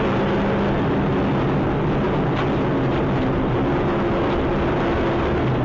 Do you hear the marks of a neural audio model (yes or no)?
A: no